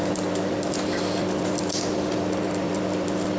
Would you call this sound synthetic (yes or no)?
no